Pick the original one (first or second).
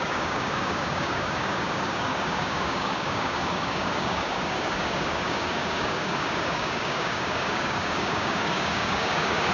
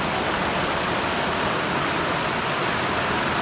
second